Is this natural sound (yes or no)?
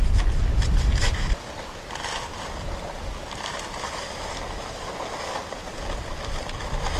yes